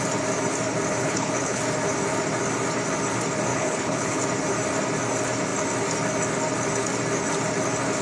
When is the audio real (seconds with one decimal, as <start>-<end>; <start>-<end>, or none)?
0.0-1.0; 1.6-3.5; 4.2-8.0